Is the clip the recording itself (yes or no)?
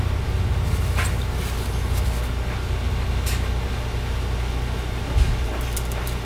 yes